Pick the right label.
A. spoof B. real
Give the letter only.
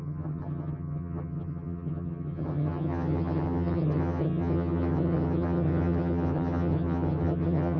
A